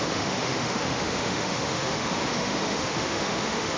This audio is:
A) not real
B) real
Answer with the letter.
A